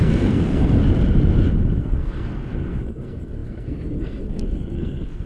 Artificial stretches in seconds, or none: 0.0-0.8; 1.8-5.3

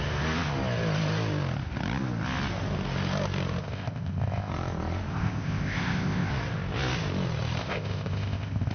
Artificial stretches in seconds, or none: 3.6-4.5; 5.1-6.3; 7.6-8.7

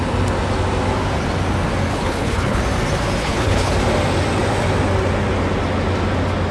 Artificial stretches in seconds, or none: 1.9-2.6; 3.2-3.7

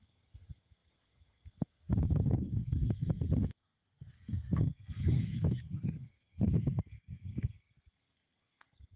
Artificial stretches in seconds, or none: 0.0-9.0

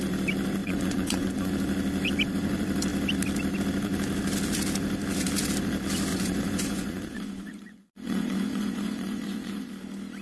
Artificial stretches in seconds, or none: 0.6-1.5; 6.1-9.7

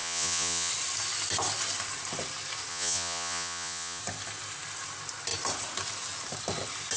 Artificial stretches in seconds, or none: 0.0-0.7; 2.7-4.0

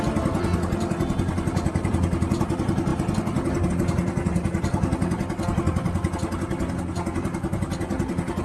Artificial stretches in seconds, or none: none

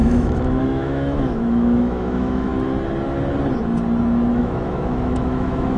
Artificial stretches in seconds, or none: 0.0-2.5; 4.3-5.8